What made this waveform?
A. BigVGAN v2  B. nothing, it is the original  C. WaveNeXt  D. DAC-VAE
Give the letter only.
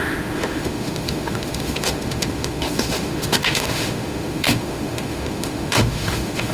D